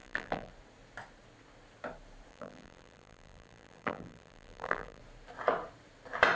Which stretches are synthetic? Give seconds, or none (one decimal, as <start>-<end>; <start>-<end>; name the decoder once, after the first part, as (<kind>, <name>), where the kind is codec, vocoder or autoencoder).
0.0-0.5 (vocoder, BigVGAN v2); 2.3-5.0